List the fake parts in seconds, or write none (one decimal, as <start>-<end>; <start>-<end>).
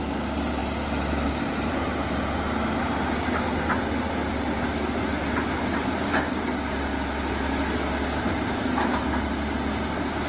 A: none